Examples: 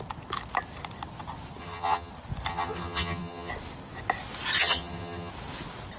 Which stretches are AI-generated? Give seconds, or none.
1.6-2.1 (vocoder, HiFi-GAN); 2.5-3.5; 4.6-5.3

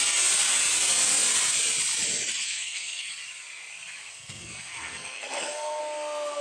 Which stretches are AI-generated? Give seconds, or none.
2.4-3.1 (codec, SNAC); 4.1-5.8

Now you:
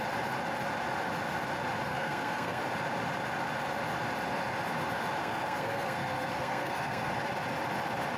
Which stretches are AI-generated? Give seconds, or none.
1.9-2.6 (codec, SNAC); 5.2-7.1

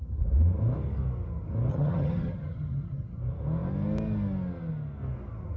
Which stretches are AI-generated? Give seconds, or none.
1.7-3.2 (vocoder, HiFi-GAN)

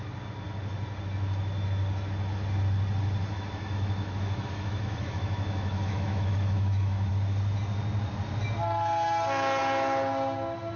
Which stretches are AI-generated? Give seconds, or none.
3.3-7.1 (autoencoder, DAC-VAE)

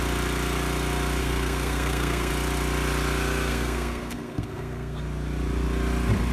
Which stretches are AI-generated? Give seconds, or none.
1.2-2.3 (codec, SNAC); 3.5-5.0

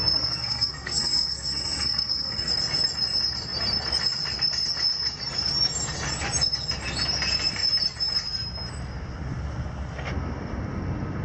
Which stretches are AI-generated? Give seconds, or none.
0.0-2.5 (codec, SNAC)

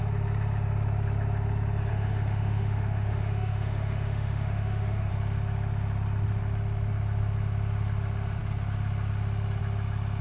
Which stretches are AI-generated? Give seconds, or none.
1.9-5.1 (autoencoder, DAC-VAE)